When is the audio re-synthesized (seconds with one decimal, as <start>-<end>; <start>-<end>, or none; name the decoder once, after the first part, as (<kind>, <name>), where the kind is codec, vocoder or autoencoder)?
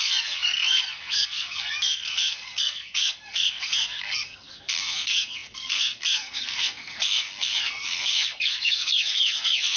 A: 0.0-9.8 (codec, SNAC)